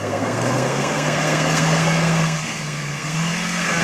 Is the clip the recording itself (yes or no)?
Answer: no